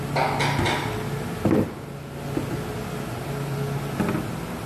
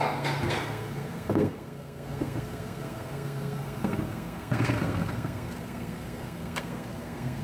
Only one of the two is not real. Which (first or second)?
second